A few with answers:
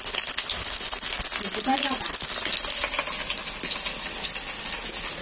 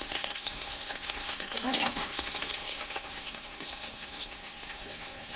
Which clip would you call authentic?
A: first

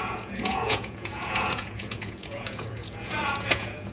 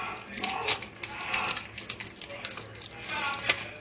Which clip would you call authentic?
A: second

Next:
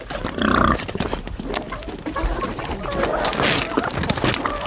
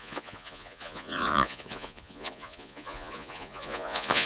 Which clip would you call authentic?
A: first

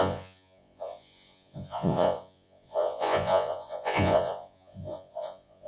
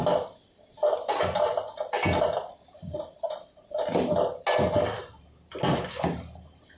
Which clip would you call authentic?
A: second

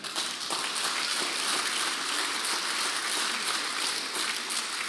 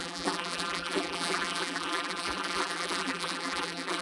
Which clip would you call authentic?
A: first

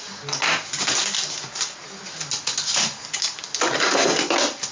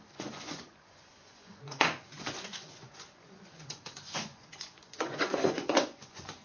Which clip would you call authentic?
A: first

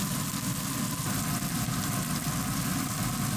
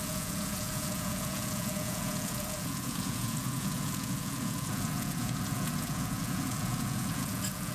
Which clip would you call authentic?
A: first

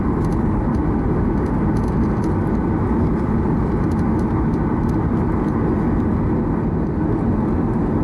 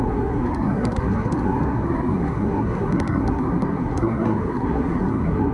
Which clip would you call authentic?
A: first